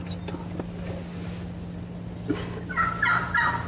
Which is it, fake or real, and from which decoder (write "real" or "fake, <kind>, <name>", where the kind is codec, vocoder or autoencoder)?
real